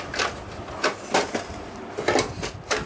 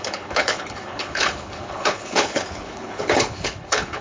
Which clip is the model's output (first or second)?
second